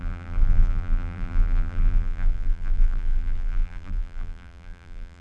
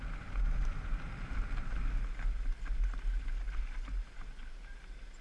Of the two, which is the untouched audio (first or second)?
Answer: second